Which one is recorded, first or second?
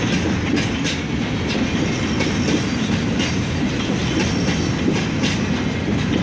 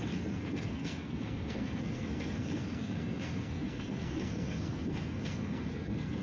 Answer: first